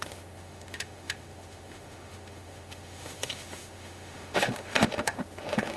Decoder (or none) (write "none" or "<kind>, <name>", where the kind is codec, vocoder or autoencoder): autoencoder, DAC-VAE